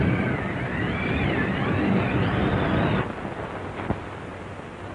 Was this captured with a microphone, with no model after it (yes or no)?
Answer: yes